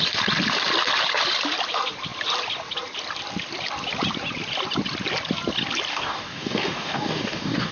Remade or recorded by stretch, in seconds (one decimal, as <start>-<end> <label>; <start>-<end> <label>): 0.0-5.9 recorded; 5.9-7.7 remade